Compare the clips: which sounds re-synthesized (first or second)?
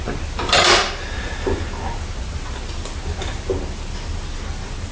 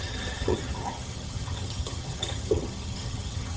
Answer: second